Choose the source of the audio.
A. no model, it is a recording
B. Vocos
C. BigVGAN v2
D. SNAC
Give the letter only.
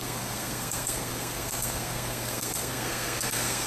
D